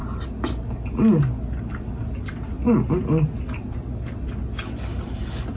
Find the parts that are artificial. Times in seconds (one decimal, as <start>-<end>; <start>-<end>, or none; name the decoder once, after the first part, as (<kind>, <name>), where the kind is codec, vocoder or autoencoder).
4.9-5.6 (vocoder, BigVGAN v2)